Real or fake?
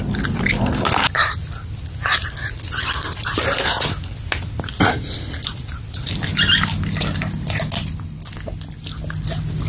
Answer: real